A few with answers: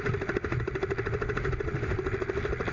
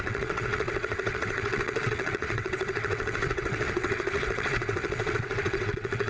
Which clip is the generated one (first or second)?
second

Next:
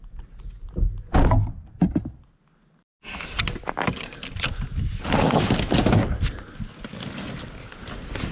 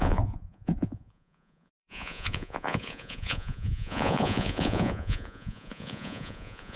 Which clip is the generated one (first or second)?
second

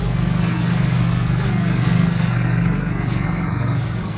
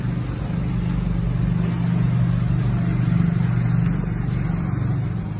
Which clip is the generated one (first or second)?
first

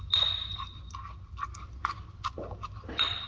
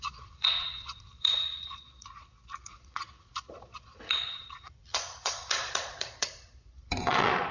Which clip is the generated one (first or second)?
second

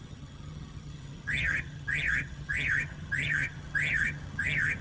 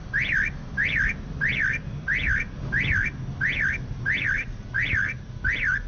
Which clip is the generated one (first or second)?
first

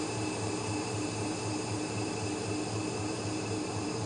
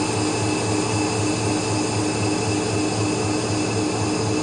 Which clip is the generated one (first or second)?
first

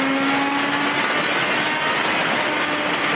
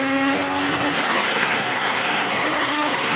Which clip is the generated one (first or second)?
second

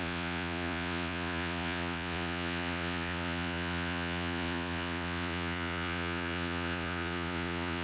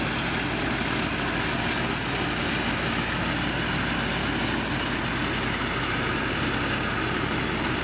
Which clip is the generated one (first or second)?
first